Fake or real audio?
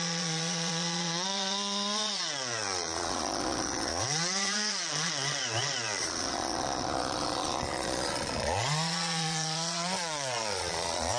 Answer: fake